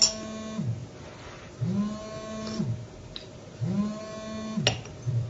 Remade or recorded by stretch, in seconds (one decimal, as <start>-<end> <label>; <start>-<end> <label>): 0.0-5.3 recorded